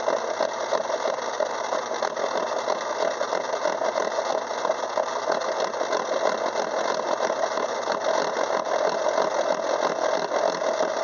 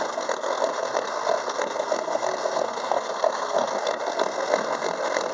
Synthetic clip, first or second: second